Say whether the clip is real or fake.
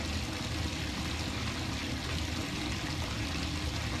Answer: real